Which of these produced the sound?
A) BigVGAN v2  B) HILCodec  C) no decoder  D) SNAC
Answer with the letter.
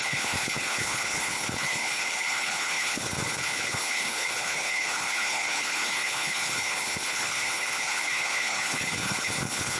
B